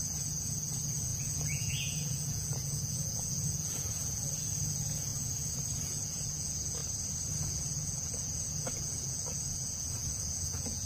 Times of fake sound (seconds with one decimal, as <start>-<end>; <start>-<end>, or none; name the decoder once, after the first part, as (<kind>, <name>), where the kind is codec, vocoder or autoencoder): 0.0-6.8 (vocoder, Vocos); 7.4-10.9